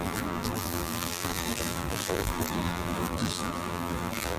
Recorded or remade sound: remade